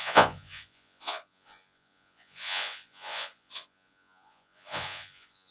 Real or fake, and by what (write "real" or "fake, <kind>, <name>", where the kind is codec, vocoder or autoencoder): fake, vocoder, Vocos